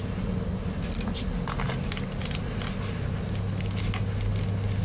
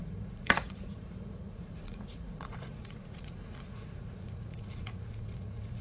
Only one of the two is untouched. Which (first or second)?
first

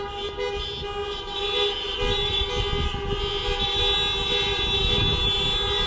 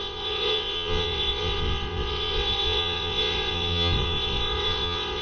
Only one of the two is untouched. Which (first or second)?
first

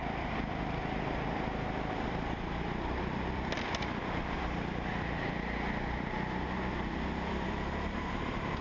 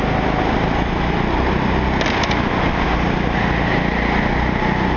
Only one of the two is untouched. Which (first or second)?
second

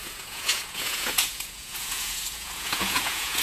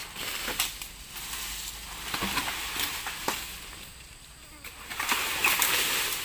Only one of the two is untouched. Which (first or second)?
second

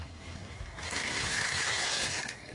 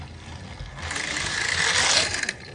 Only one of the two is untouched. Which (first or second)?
second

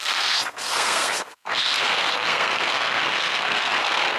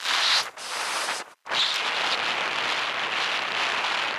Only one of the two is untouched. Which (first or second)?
second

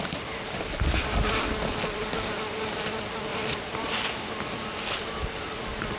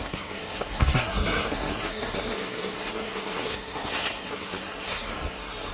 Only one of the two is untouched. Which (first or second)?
first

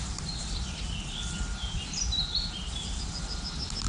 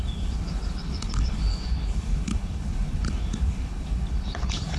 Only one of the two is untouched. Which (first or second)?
first